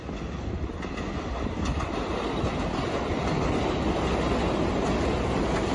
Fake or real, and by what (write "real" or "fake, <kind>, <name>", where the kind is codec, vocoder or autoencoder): real